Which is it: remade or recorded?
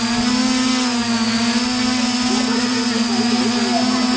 recorded